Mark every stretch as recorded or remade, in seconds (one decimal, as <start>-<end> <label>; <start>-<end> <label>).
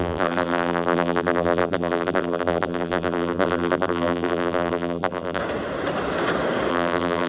0.0-5.4 remade; 5.4-6.7 recorded; 6.7-7.3 remade